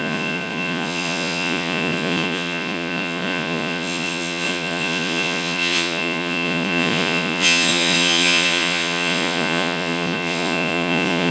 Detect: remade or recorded remade